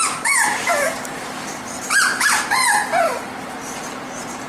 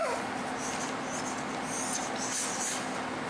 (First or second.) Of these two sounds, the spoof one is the first